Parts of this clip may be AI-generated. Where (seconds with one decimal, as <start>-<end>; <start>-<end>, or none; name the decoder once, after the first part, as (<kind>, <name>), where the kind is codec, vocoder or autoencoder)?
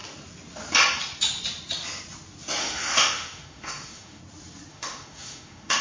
2.6-4.2 (autoencoder, DAC-VAE); 4.7-5.8